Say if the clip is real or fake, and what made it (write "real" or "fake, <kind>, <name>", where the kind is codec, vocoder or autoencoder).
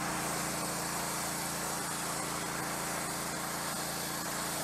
real